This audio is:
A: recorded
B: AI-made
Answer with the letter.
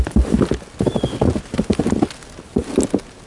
A